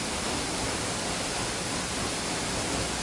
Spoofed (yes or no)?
no